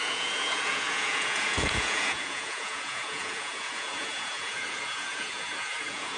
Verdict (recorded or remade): remade